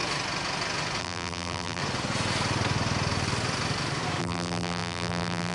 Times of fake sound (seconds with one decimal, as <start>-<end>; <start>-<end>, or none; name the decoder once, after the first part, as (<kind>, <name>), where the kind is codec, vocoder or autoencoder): 1.0-1.8 (vocoder, BigVGAN v2); 4.2-5.5